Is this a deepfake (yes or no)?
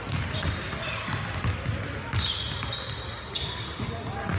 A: no